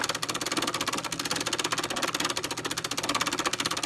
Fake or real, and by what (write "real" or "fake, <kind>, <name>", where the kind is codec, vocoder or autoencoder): real